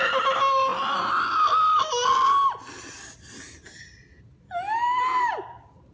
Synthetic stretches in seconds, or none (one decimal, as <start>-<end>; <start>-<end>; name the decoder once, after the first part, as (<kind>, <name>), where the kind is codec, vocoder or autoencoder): none